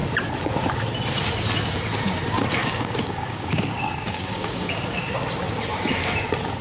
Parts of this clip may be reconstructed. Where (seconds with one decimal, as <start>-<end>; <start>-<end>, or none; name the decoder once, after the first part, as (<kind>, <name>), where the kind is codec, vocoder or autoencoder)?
2.6-5.1 (codec, DAC)